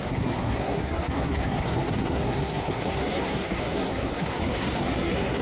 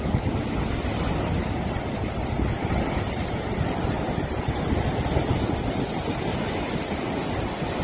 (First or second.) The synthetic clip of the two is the first